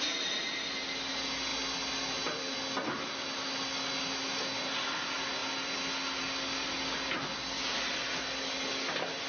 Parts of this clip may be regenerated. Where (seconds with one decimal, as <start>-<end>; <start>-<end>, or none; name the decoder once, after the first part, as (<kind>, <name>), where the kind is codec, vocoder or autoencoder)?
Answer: none